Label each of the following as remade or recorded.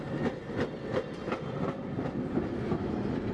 recorded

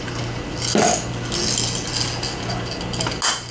recorded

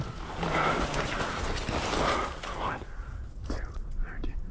recorded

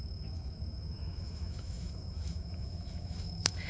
remade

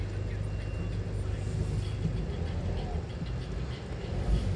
recorded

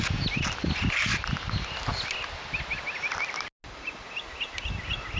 recorded